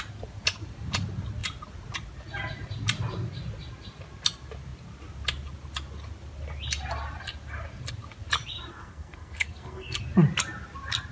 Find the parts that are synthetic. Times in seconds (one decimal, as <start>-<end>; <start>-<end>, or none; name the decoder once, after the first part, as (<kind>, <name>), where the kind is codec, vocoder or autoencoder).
8.7-10.0 (codec, SNAC)